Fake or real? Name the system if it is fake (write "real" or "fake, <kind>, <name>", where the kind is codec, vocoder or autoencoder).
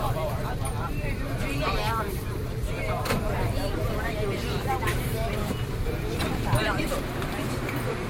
fake, vocoder, BigVGAN v2